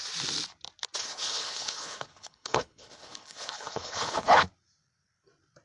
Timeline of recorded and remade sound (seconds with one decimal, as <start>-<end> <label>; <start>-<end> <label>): 0.0-1.0 recorded; 1.0-4.4 remade; 4.4-5.6 recorded